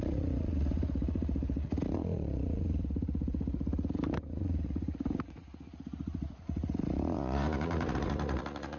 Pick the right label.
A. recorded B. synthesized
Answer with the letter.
B